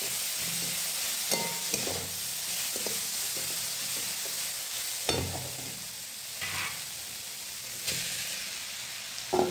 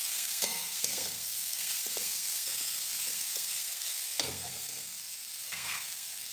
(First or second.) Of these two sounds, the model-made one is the second